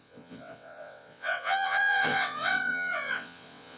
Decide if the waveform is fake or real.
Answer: fake